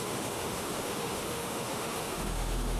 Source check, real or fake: fake